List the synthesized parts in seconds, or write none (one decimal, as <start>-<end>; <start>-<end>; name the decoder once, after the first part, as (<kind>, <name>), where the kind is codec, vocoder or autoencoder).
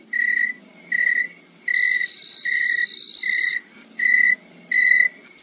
none